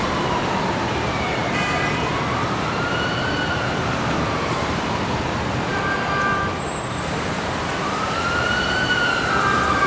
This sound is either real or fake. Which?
fake